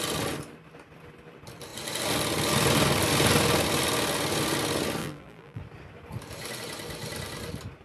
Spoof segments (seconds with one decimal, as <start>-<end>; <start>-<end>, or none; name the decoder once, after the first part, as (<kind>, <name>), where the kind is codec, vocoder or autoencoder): 5.0-5.6 (vocoder, BigVGAN v2)